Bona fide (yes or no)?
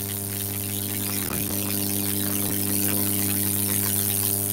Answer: yes